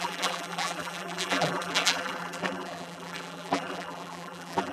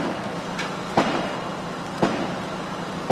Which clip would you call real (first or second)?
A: second